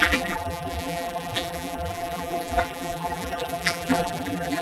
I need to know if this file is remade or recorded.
remade